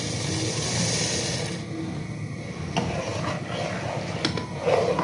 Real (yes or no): yes